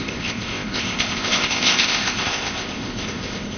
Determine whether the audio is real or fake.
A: fake